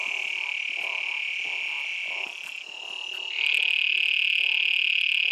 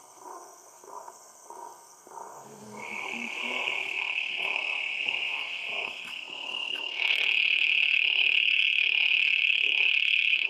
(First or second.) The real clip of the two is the first